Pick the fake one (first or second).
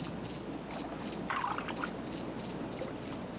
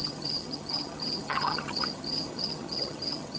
second